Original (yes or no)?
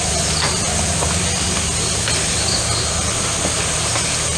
yes